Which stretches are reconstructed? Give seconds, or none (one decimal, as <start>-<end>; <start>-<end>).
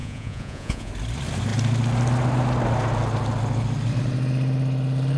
0.0-0.9